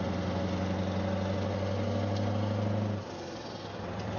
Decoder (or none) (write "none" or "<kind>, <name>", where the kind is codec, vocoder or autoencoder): none